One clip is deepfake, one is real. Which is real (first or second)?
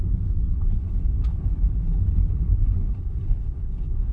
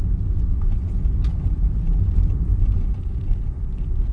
second